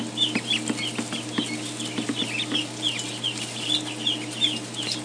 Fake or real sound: real